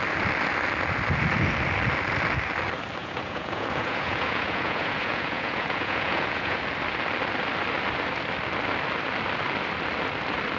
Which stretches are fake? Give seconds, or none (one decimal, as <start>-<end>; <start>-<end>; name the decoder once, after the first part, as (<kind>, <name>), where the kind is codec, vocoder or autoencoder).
3.0-6.6 (vocoder, Vocos)